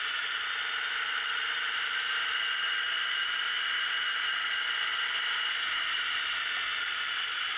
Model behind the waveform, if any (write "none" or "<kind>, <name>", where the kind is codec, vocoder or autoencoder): none